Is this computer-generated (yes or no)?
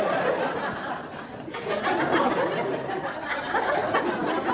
no